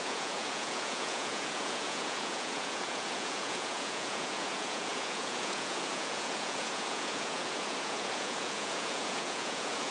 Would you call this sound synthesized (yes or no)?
yes